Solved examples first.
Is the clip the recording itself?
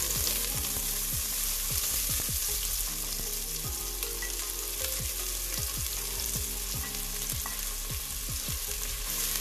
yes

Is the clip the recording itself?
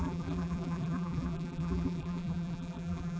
no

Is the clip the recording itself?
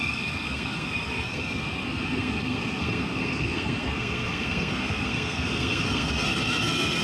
no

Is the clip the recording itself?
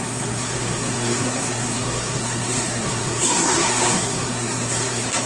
no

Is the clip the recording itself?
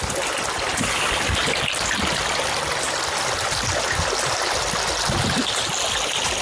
yes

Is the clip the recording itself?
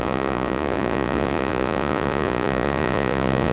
no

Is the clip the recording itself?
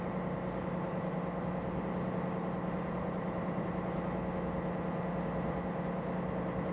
yes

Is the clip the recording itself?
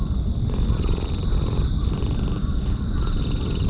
yes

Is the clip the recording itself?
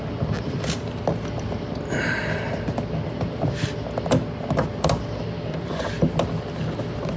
yes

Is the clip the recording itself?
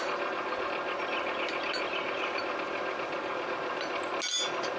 yes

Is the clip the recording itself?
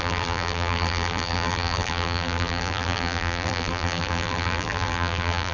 no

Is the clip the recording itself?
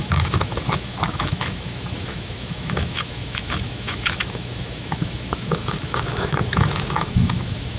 no